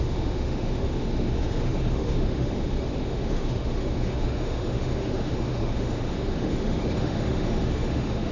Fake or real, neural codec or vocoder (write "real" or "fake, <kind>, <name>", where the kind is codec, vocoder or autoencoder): fake, autoencoder, DAC-VAE